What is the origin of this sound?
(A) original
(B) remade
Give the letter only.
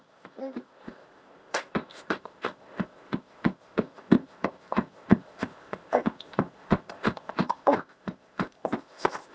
B